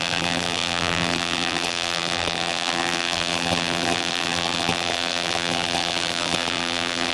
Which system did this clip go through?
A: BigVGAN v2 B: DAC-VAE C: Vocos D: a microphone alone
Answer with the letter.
A